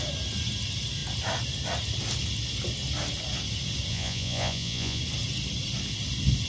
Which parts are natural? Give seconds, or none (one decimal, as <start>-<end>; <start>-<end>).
0.0-3.9; 5.0-6.5